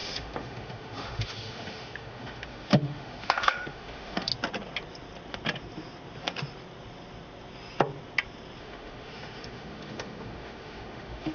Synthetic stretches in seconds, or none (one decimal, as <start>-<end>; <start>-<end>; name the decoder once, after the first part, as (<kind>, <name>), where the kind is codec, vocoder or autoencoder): 0.0-4.3 (autoencoder, DAC-VAE); 8.6-11.3